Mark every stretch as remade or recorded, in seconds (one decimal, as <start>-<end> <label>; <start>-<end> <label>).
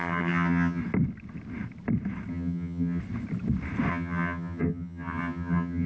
0.0-0.8 remade; 0.8-2.3 recorded; 2.3-3.0 remade; 3.0-3.9 recorded; 3.9-5.9 remade